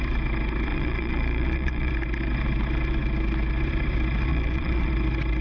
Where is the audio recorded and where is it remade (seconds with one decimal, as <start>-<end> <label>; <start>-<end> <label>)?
0.0-0.7 recorded; 0.7-1.9 remade; 1.9-4.3 recorded; 4.3-4.9 remade; 4.9-5.4 recorded